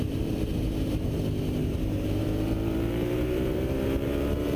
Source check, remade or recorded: remade